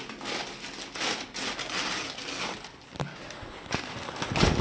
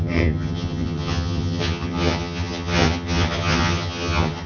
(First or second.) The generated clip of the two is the second